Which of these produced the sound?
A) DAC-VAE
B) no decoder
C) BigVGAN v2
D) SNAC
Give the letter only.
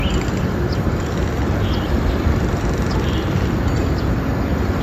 B